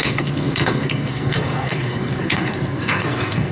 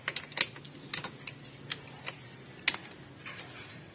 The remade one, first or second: first